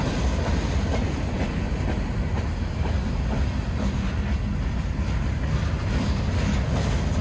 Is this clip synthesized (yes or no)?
no